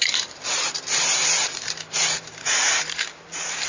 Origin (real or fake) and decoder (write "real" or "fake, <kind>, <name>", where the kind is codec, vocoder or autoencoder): fake, vocoder, BigVGAN v2